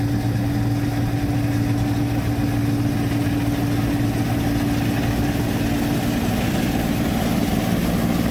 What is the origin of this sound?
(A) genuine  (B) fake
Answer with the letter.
A